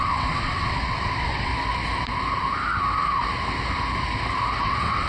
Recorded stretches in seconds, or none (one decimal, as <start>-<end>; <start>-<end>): 1.5-4.6